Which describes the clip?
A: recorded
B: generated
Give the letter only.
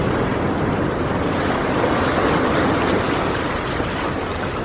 A